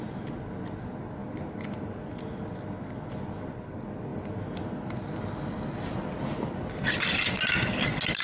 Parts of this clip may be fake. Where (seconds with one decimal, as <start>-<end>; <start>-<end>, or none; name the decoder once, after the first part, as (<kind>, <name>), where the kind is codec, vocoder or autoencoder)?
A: none